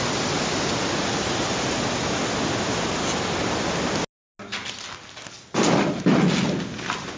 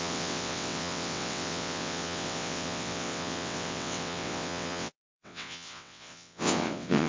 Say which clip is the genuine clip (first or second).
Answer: first